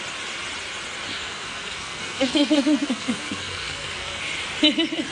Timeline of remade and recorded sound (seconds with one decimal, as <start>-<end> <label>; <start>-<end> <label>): 0.0-1.1 recorded; 1.1-4.2 remade; 4.2-5.1 recorded

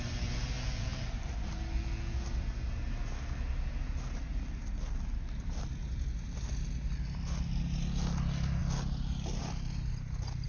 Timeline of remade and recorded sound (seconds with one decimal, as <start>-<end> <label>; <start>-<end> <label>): 0.0-10.5 recorded

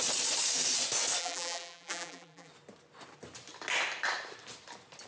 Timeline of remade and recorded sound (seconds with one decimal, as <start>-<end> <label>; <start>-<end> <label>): 0.0-1.2 recorded; 1.2-2.5 remade; 2.5-5.1 recorded

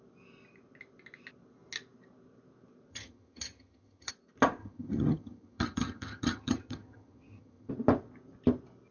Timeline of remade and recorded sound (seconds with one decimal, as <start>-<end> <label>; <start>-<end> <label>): 0.0-2.9 recorded; 2.9-4.1 remade; 4.1-4.6 recorded; 4.6-7.7 remade; 7.7-8.9 recorded

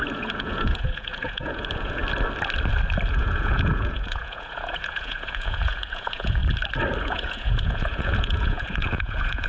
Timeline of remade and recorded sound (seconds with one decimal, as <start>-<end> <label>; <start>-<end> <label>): 0.0-2.0 remade; 2.0-3.1 recorded; 3.1-6.4 remade; 6.4-7.0 recorded; 7.0-9.5 remade

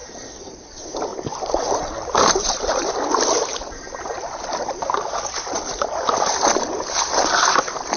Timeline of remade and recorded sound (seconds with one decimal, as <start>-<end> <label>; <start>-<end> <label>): 0.0-3.5 remade; 3.5-4.4 recorded; 4.4-8.0 remade

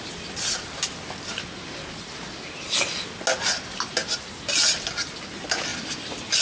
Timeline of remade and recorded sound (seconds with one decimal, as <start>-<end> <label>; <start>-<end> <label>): 0.0-6.4 recorded

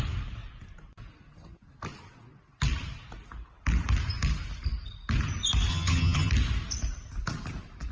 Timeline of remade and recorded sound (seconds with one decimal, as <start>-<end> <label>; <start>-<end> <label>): 0.0-5.7 recorded; 5.7-6.3 remade; 6.3-7.9 recorded